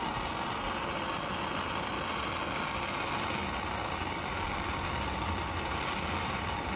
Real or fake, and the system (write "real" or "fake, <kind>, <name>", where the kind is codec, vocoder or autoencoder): real